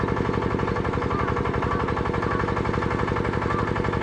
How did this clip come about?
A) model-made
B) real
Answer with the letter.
B